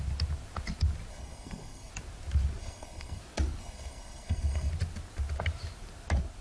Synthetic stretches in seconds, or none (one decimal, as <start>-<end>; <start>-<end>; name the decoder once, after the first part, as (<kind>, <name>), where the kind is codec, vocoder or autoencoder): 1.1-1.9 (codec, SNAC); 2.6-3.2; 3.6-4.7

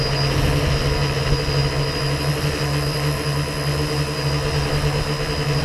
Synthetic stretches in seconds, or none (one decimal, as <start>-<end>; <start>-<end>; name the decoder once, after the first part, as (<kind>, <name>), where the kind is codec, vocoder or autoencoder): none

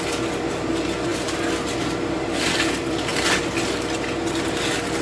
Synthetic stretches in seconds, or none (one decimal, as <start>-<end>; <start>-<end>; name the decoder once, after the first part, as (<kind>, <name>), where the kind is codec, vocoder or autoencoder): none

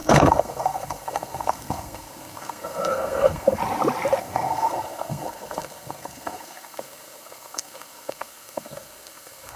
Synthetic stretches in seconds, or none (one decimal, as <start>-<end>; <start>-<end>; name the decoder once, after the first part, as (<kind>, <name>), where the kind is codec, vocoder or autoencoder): 0.0-3.6 (codec, SNAC); 4.2-9.6

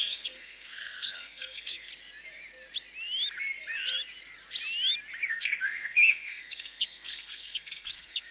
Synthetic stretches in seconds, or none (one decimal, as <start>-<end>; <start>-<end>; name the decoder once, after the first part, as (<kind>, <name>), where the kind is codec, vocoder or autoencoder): 0.0-1.9 (codec, SNAC); 5.3-8.3